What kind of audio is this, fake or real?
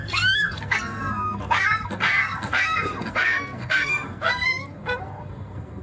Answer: fake